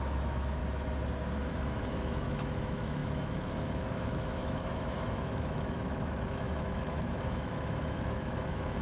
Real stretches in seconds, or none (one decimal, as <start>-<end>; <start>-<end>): 0.6-1.5